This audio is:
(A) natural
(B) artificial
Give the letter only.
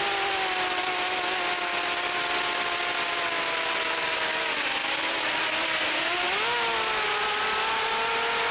A